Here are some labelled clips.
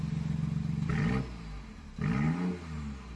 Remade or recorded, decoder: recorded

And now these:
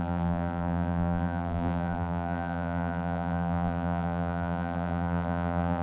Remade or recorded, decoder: remade, vocoder, BigVGAN v2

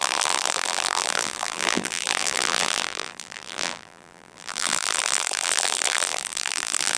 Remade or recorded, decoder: remade, vocoder, BigVGAN v2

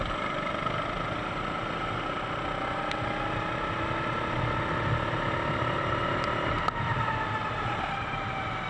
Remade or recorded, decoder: recorded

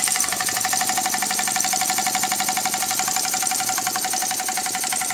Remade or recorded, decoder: recorded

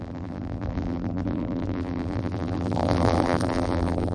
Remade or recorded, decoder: remade, vocoder, BigVGAN v2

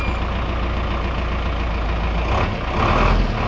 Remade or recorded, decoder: recorded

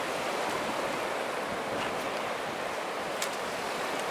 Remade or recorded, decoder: recorded